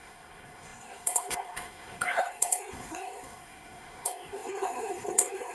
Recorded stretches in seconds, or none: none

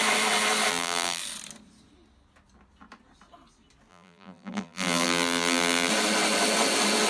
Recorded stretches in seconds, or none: 0.0-0.7; 1.2-3.9; 5.9-7.1

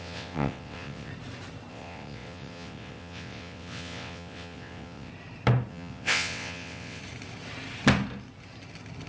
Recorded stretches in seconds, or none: 1.1-1.7; 5.1-5.7; 7.0-9.1

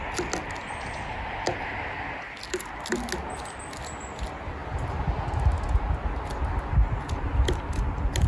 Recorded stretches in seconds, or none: 0.0-1.1; 1.7-8.3